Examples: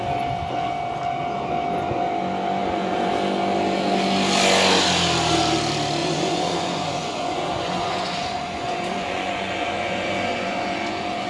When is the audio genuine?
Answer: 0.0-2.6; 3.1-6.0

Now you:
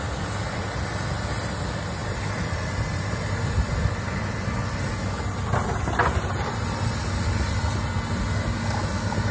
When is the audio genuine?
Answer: 0.0-2.0; 3.7-9.3

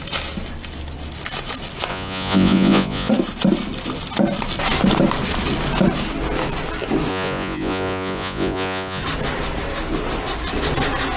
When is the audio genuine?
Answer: 0.0-1.9; 3.1-7.1; 9.0-11.2

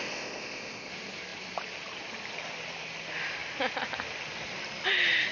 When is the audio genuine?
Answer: 0.9-5.3